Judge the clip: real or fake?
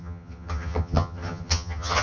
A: fake